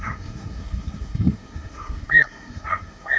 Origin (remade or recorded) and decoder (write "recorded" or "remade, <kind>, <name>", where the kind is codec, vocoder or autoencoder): remade, codec, SNAC